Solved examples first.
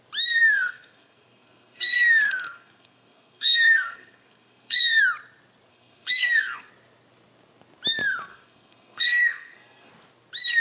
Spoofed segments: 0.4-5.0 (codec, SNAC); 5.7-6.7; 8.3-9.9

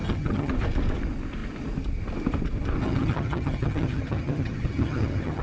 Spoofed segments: 0.0-0.5 (vocoder, HiFi-GAN); 2.8-5.4

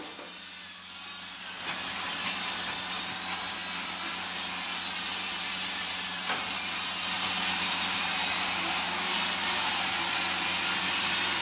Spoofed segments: 5.1-8.8 (vocoder, BigVGAN v2)

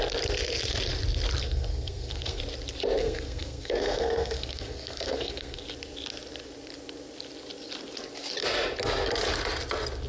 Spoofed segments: 1.4-2.4 (codec, SNAC); 3.0-5.6

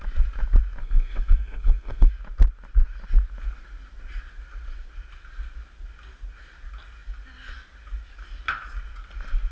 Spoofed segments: 0.8-2.1 (codec, SNAC)